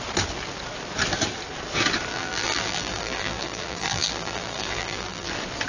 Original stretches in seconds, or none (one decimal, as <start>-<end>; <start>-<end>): 0.0-2.1; 5.3-5.7